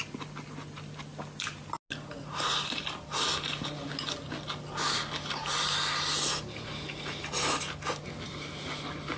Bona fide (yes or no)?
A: yes